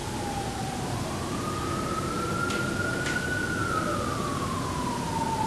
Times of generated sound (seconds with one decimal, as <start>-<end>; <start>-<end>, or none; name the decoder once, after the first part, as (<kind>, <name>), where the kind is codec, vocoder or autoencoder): none